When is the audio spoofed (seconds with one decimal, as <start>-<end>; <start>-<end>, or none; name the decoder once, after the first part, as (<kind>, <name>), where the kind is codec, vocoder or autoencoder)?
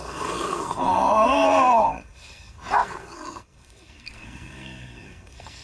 0.0-5.6 (codec, SNAC)